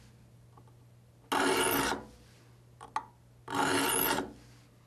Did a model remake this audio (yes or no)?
no